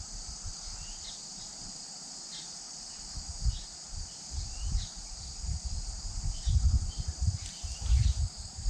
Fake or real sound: real